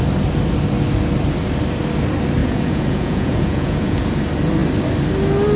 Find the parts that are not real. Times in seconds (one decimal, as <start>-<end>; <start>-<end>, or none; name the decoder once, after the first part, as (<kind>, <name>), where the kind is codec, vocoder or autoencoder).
2.4-4.1 (vocoder, Vocos)

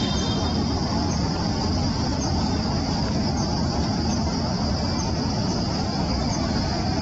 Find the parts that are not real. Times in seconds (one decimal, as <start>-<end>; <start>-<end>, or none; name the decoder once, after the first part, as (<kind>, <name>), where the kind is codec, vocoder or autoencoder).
0.4-1.5 (vocoder, BigVGAN v2)